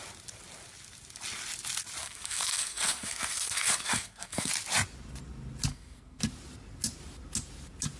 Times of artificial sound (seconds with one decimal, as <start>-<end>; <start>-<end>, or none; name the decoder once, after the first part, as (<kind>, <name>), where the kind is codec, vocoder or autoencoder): 2.0-4.5 (codec, SNAC); 5.7-6.2